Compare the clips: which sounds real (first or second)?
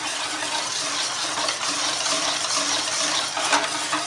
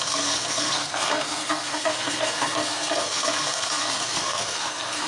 first